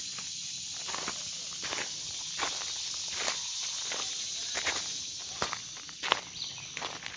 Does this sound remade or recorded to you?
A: recorded